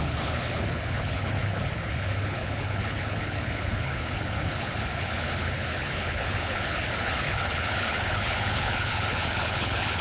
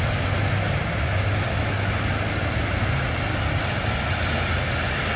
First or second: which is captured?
second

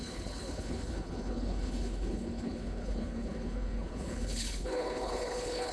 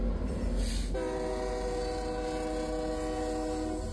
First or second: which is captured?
second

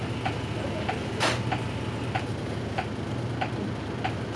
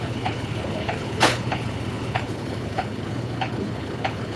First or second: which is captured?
first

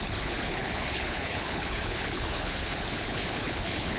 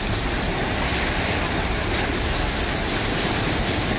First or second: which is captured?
second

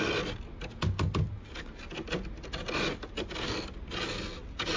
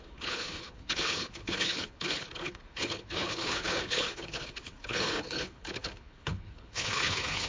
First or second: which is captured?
first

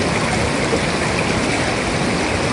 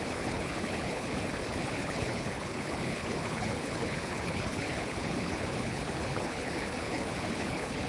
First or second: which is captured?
first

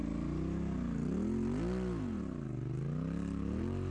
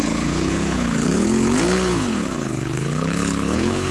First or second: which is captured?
first